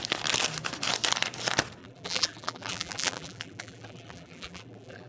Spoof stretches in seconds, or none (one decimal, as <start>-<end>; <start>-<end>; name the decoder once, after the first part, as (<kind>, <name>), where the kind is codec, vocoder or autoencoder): 1.8-5.1 (vocoder, BigVGAN v2)